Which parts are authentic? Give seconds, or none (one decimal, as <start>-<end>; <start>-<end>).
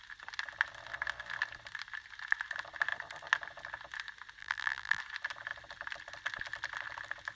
0.0-4.4; 5.0-7.3